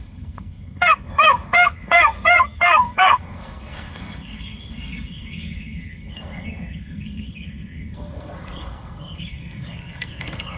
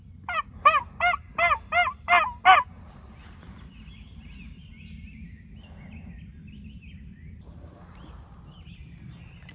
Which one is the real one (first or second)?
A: second